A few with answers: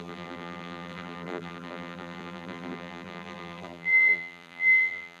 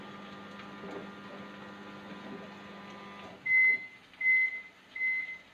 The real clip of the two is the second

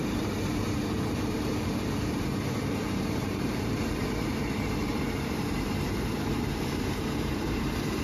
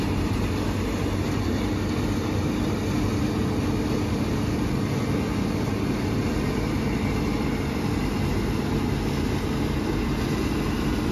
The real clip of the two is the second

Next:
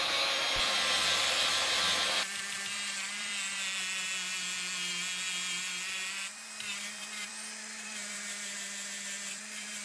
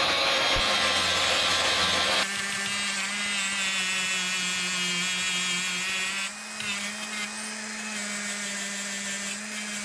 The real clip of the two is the second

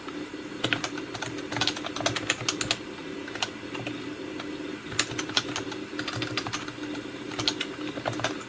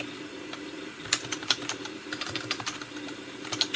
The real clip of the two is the first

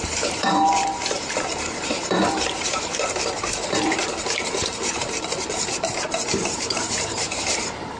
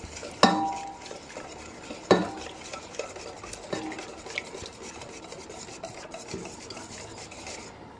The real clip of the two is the second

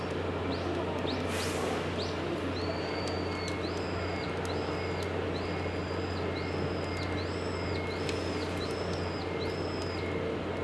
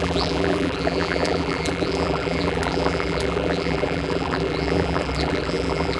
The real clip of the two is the first